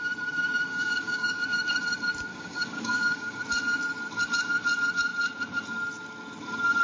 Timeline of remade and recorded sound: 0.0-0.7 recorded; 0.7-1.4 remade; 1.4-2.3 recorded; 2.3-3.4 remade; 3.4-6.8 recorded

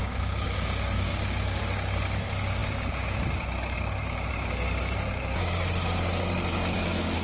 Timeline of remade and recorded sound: 0.0-7.2 remade

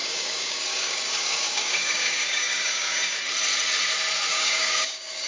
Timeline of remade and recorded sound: 0.0-3.2 remade; 3.2-4.3 recorded; 4.3-5.3 remade

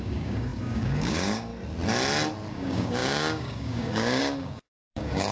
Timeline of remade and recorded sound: 0.0-1.5 remade; 1.5-2.5 recorded; 2.5-5.3 remade